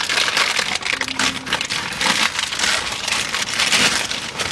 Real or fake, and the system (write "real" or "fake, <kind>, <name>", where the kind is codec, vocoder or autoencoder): real